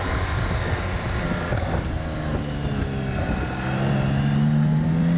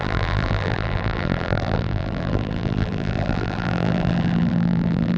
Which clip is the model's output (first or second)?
second